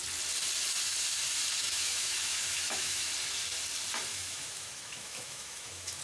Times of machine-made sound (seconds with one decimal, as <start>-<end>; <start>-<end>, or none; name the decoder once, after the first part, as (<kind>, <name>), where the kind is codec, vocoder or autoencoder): 1.6-3.1 (autoencoder, DAC-VAE); 4.1-6.0